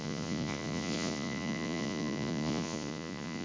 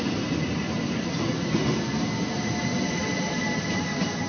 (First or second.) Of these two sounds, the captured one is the second